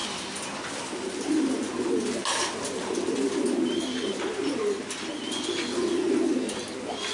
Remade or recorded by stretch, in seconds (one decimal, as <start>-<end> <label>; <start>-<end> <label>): 0.0-2.4 remade; 2.4-7.1 recorded